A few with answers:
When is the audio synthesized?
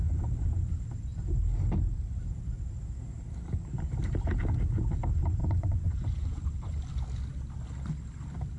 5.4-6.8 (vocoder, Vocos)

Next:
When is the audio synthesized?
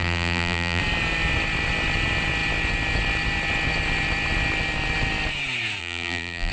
0.0-0.8 (vocoder, BigVGAN v2); 5.8-6.5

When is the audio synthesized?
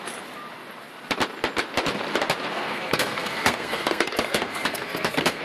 2.5-5.4 (codec, SNAC)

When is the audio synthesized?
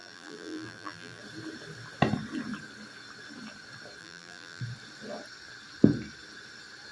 0.0-1.2 (vocoder, BigVGAN v2); 4.0-4.6